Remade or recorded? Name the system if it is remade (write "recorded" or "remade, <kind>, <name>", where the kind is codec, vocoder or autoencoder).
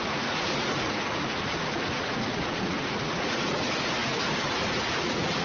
remade, vocoder, Vocos